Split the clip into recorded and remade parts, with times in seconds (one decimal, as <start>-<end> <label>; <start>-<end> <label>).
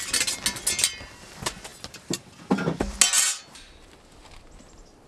0.0-5.1 recorded